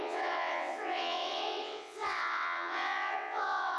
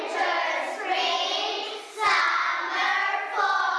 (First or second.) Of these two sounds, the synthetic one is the first